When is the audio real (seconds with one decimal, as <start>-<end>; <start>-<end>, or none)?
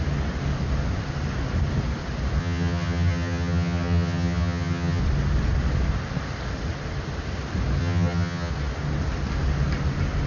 0.0-2.4; 5.0-7.8; 8.5-10.3